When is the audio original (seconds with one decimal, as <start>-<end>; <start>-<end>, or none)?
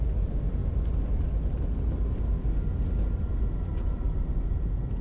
0.0-3.7